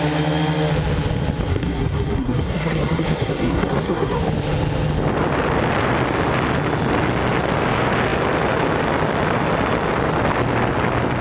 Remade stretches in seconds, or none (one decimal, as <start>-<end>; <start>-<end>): 1.5-4.2